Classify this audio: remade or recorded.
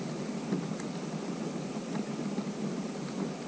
recorded